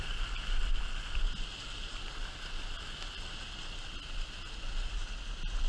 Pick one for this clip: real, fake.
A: real